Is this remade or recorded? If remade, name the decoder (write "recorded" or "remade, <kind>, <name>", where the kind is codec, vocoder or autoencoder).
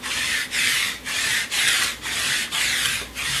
recorded